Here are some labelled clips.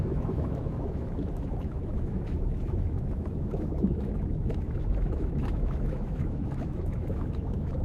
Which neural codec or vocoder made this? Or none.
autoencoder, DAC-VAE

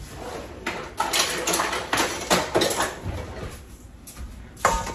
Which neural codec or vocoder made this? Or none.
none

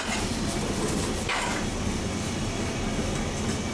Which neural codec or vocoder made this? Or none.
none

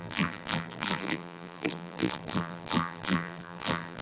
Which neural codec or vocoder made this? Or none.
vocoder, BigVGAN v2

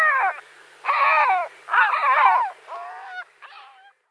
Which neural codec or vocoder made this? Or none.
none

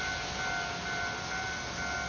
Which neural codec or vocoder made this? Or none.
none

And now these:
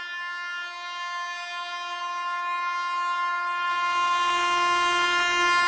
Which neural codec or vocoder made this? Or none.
none